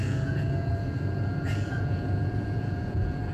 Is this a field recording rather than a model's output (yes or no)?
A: no